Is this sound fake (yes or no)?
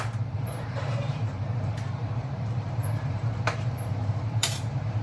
yes